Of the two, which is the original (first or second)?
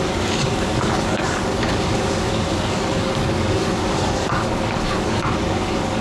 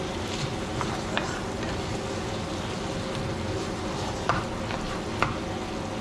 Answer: second